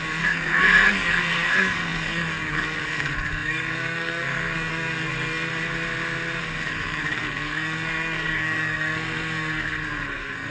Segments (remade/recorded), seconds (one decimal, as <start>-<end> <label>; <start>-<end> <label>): 0.0-5.5 remade; 5.5-6.4 recorded; 6.4-10.5 remade